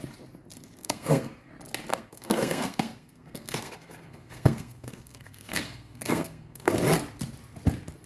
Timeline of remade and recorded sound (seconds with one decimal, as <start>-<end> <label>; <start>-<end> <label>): 0.0-0.8 recorded; 0.8-1.5 remade; 1.5-1.9 recorded; 1.9-6.7 remade; 6.7-8.1 recorded